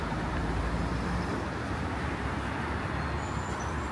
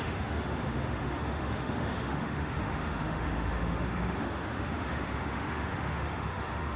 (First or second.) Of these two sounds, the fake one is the second